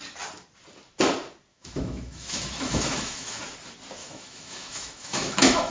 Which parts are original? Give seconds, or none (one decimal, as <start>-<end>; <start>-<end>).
0.0-1.5; 3.4-4.0